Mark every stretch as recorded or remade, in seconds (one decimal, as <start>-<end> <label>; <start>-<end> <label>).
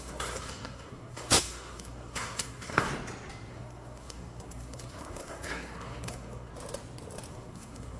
0.0-2.9 remade; 2.9-3.5 recorded; 3.5-6.5 remade; 6.5-7.3 recorded; 7.3-8.0 remade